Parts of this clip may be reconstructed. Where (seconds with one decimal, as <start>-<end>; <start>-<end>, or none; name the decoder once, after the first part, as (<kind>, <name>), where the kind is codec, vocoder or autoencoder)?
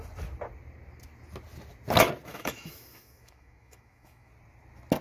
2.3-4.3 (autoencoder, DAC-VAE)